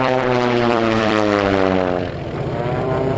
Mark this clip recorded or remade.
remade